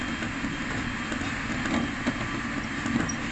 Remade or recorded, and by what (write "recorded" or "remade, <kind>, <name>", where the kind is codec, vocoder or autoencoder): recorded